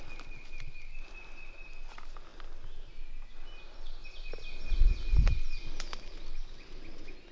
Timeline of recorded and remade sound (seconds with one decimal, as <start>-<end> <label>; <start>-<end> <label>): 0.0-7.3 recorded